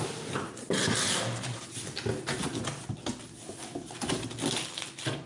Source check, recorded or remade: recorded